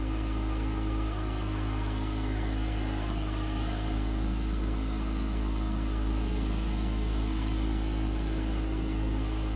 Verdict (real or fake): fake